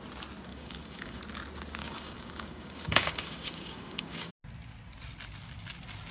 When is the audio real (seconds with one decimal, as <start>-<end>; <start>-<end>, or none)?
0.0-0.5; 1.2-1.8; 4.3-6.1